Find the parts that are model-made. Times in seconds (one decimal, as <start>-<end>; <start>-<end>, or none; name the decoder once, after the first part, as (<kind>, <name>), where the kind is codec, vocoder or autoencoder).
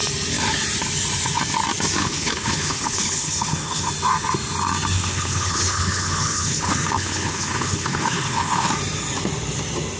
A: 2.0-3.9 (codec, HILCodec); 4.9-8.7